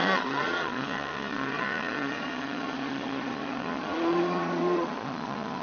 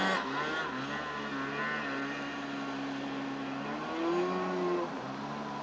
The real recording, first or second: second